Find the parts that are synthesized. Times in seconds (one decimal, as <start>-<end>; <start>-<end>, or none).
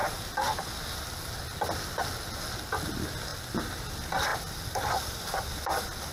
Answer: 3.3-3.8; 4.3-4.9